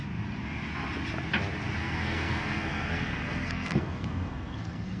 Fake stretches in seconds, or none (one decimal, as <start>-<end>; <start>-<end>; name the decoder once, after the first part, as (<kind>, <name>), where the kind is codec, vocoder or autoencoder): 1.8-5.0 (codec, SNAC)